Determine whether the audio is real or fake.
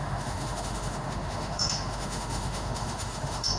fake